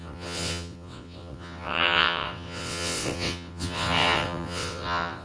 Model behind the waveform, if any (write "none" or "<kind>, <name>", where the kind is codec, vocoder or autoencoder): vocoder, WaveNeXt